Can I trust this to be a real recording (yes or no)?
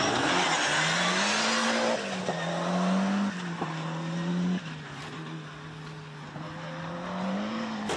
yes